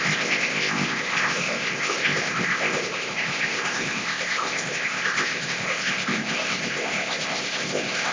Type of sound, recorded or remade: remade